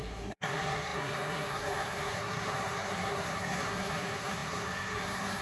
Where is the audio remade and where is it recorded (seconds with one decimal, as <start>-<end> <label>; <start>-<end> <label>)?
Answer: 0.0-5.4 remade